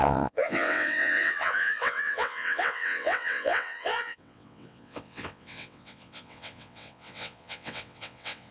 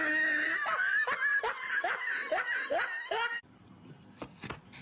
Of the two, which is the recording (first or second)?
second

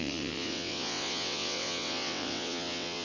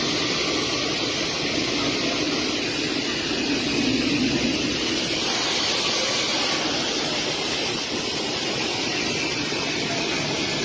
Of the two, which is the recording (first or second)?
second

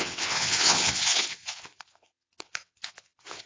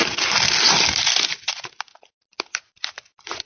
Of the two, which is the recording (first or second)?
second